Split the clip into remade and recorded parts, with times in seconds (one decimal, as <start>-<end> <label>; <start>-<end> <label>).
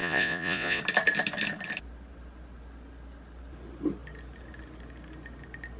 0.0-0.8 remade; 0.8-5.8 recorded